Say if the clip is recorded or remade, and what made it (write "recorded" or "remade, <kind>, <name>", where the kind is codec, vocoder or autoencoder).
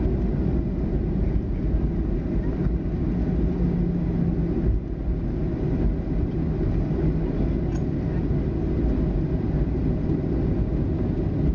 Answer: recorded